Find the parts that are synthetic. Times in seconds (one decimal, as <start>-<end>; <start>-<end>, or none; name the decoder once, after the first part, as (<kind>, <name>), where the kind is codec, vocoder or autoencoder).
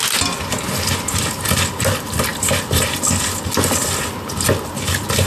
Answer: none